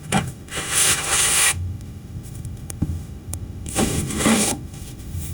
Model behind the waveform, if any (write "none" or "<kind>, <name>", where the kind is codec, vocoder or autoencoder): autoencoder, DAC-VAE